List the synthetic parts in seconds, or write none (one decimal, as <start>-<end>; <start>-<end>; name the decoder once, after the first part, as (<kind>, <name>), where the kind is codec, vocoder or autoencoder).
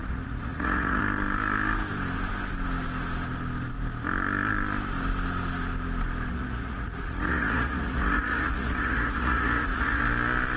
0.0-1.0 (vocoder, Vocos); 6.3-10.0